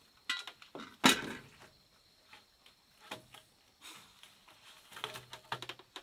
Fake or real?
real